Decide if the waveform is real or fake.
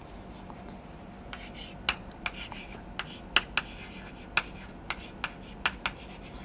real